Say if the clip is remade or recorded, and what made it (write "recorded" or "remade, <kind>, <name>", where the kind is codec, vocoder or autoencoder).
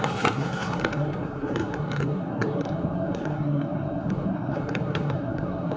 remade, codec, SNAC